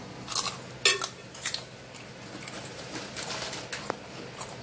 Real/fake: real